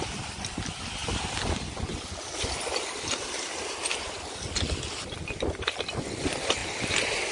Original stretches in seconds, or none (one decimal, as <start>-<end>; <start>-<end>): 0.0-7.3